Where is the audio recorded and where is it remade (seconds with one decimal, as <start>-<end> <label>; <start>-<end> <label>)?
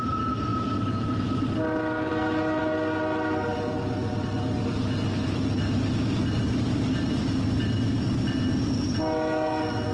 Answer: 0.0-9.9 recorded